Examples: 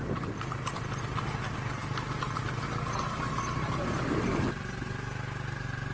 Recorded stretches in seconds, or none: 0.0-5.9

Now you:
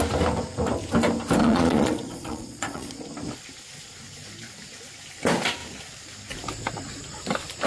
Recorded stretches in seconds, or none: 0.0-1.4; 3.1-7.7

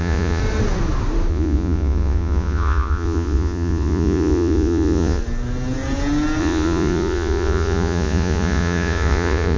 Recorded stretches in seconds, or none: 0.4-1.3; 5.2-6.4

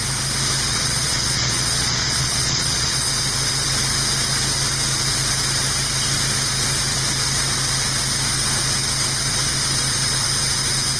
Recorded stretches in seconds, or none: 0.0-0.7; 3.1-11.0